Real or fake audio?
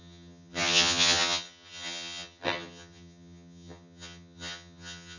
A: fake